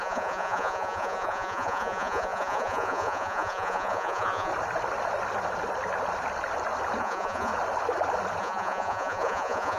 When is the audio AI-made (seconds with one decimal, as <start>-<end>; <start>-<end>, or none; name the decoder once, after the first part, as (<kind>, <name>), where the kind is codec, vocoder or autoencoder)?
0.0-4.5 (vocoder, Vocos); 7.0-7.5; 8.4-9.8